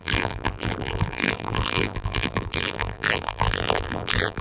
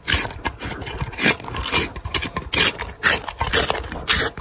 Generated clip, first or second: first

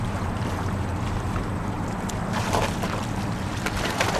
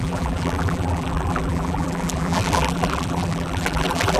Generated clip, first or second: second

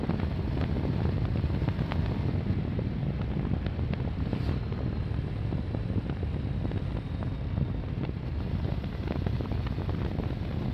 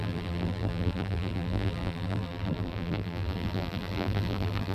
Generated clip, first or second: second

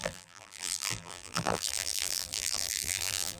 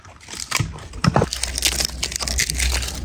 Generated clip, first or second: first